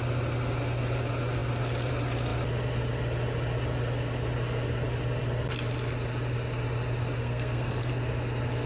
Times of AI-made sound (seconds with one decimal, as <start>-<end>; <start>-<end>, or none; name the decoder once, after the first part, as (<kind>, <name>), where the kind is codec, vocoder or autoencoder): 7.2-7.9 (codec, SNAC)